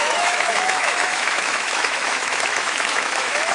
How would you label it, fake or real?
fake